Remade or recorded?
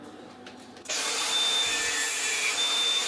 remade